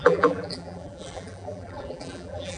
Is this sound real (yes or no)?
no